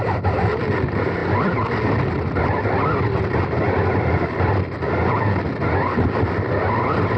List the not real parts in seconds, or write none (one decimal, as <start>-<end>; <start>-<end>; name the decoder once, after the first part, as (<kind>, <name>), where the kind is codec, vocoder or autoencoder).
none